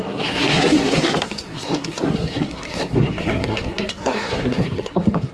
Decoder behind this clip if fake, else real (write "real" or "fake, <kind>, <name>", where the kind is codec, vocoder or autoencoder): fake, codec, SNAC